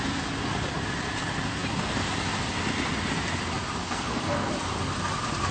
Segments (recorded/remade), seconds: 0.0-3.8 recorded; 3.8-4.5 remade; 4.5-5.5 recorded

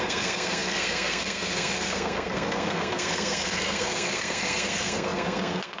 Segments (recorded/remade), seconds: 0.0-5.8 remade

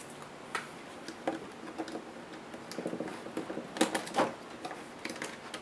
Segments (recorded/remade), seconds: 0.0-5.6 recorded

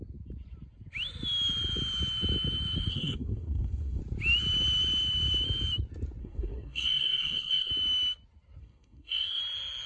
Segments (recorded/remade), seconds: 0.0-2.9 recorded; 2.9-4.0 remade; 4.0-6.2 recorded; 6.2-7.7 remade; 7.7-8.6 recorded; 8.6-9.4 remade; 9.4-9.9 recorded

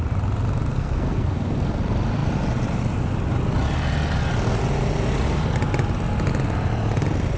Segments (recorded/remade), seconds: 0.0-0.7 recorded; 0.7-1.8 remade; 1.8-7.4 recorded